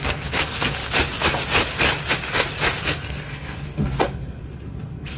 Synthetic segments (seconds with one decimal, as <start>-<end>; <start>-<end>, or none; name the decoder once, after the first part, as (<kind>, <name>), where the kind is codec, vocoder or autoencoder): 0.0-0.8 (codec, SNAC); 2.8-5.2